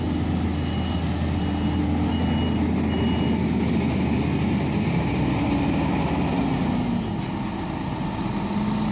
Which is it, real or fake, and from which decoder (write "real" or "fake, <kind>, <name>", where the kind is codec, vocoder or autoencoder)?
real